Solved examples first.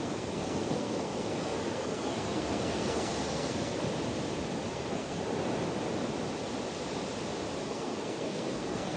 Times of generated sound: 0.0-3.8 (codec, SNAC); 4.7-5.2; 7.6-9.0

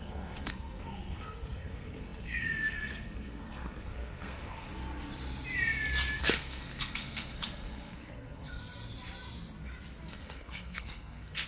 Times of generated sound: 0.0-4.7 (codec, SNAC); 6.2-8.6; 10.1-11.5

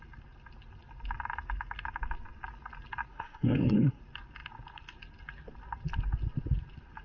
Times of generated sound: 3.1-4.0 (codec, SNAC)